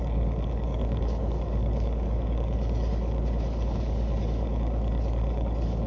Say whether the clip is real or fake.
fake